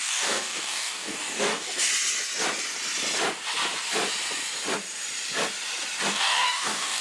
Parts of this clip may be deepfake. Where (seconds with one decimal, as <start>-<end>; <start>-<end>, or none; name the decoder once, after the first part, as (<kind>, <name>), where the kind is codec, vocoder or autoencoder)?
0.0-1.9 (codec, DAC); 6.1-7.0